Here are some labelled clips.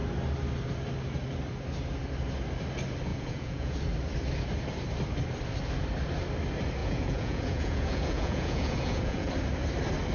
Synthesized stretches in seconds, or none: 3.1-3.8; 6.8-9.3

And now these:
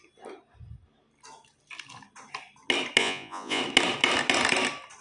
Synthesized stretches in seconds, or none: 3.0-3.6

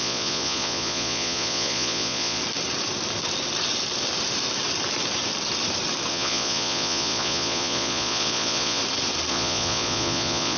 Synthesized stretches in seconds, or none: 0.0-2.4; 6.1-8.8; 9.3-10.6

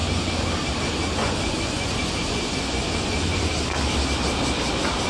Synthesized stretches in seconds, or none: 1.2-3.5

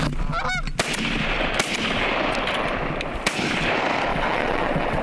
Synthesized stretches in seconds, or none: 4.1-5.0

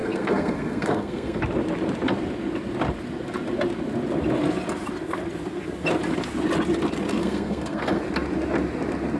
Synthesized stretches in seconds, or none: 0.0-1.4; 7.2-8.0